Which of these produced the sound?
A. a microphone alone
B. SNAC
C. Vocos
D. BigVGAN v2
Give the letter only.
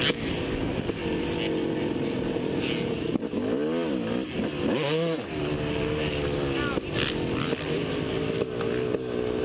A